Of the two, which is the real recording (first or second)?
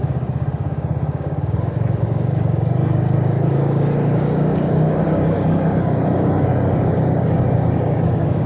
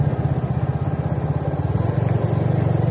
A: second